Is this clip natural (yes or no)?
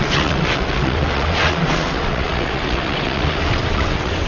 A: no